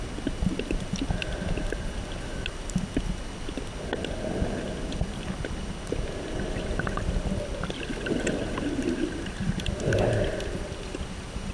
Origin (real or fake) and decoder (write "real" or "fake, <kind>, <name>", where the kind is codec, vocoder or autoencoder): real